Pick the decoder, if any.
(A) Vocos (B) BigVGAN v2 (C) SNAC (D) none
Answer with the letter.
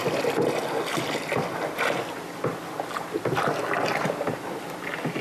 D